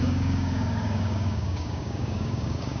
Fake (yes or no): yes